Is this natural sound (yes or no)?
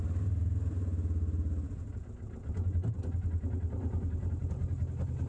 yes